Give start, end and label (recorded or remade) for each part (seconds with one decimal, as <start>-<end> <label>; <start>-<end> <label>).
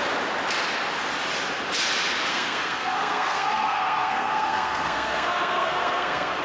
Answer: 0.0-2.3 recorded; 2.3-6.4 remade